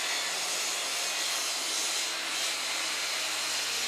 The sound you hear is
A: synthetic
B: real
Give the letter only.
B